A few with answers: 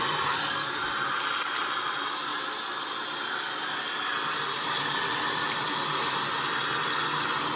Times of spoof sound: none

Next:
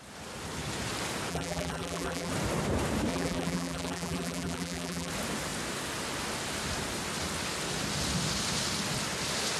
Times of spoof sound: 1.3-2.3 (vocoder, BigVGAN v2); 3.1-5.1

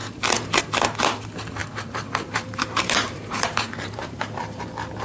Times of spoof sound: 0.0-0.6 (vocoder, BigVGAN v2); 1.6-4.6

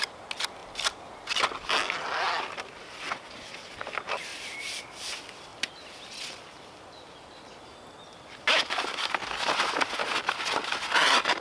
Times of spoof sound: 4.3-4.8 (vocoder, BigVGAN v2); 5.5-7.4